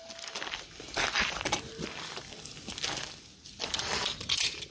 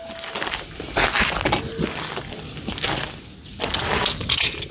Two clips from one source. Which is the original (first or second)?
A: second